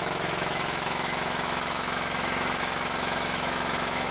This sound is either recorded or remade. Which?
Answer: remade